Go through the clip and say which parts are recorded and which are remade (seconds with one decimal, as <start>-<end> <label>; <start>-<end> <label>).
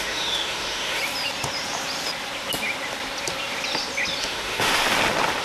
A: 0.0-1.0 remade; 1.0-4.2 recorded; 4.2-4.7 remade; 4.7-5.4 recorded